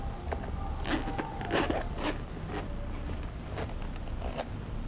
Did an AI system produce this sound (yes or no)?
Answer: no